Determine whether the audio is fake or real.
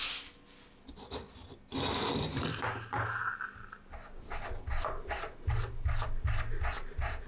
real